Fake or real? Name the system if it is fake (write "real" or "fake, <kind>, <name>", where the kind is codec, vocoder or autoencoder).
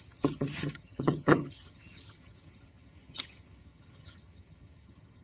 fake, vocoder, HiFi-GAN